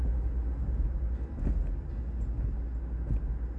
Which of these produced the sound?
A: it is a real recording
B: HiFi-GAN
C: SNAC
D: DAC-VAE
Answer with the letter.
A